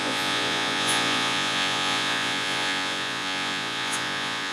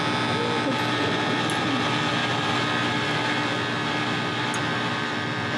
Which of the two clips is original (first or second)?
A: second